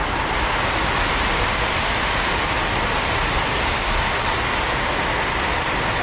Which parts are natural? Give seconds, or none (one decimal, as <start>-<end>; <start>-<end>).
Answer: 0.0-6.0

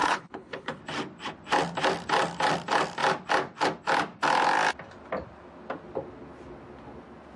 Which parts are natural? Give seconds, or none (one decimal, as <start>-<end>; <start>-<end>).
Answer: 0.8-7.4

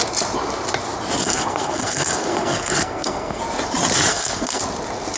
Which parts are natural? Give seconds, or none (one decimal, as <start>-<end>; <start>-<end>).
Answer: 0.0-1.2; 3.4-4.1; 4.6-5.2

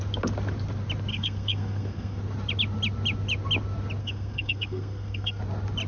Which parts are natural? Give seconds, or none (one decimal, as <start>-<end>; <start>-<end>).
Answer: 0.0-1.1; 2.2-4.0; 5.4-5.9

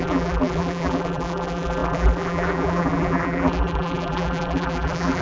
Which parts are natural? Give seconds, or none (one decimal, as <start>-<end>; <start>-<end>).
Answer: none